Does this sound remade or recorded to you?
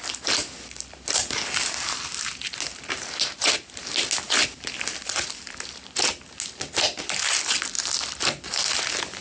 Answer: recorded